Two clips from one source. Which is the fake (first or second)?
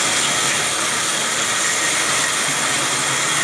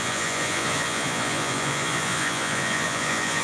second